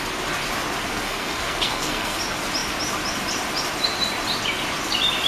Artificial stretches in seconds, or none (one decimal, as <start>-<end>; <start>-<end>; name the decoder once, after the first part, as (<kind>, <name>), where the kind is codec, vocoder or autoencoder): 0.8-2.2 (codec, SNAC)